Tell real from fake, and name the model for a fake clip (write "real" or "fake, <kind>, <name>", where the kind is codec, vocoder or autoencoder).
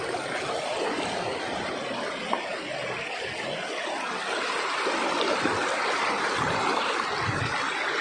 real